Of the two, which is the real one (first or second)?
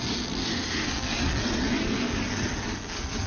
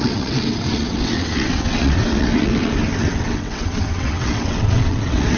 first